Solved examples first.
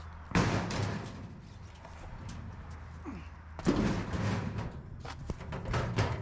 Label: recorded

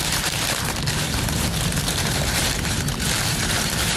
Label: remade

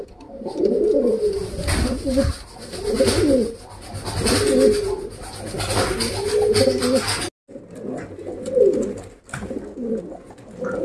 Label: recorded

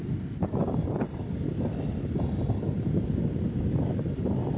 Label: recorded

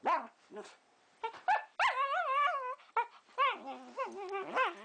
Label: recorded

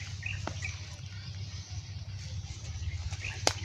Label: recorded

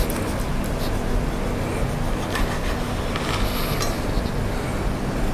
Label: recorded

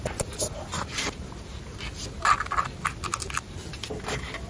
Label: recorded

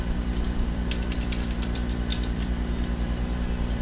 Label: recorded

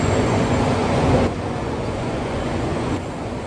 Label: remade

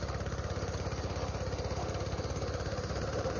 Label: remade